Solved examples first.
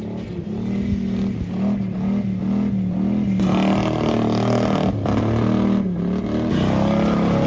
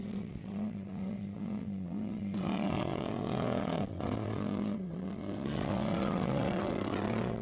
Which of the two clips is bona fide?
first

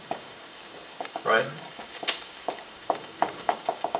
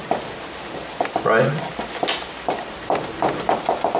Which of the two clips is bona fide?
second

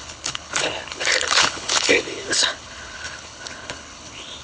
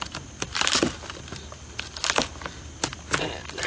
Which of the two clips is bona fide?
second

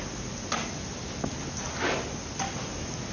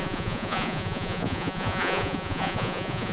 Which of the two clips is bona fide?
first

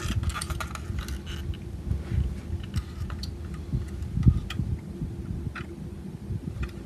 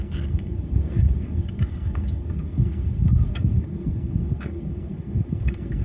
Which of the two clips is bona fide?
first